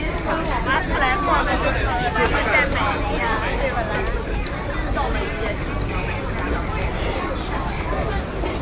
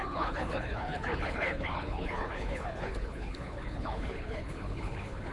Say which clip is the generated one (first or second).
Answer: second